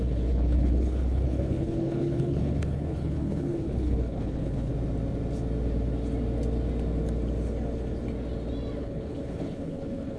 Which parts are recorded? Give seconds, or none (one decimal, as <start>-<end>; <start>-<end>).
4.7-8.8